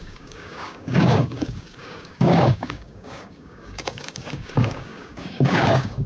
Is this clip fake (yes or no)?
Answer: yes